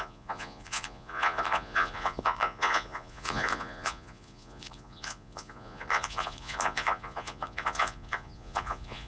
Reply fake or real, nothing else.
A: fake